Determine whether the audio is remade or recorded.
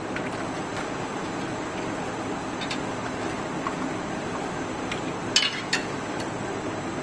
recorded